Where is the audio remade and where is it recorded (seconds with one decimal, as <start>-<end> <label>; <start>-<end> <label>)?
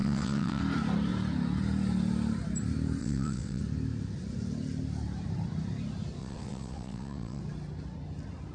0.0-0.6 remade; 0.6-3.0 recorded; 3.0-3.6 remade; 3.6-6.2 recorded; 6.2-7.4 remade; 7.4-8.5 recorded